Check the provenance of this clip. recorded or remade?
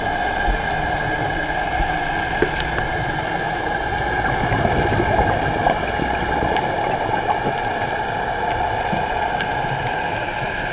recorded